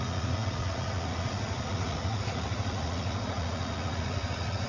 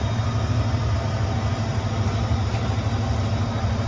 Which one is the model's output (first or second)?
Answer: first